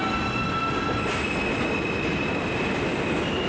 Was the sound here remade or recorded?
recorded